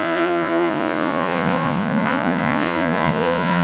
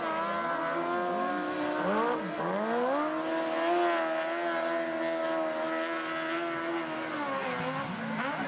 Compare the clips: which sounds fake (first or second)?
first